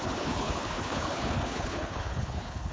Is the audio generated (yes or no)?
yes